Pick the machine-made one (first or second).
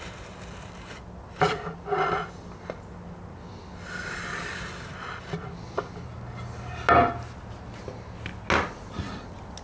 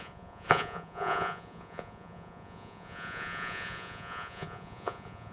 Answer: second